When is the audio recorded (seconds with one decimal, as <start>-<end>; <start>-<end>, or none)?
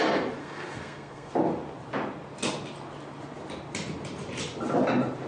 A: 0.0-0.4; 1.3-5.3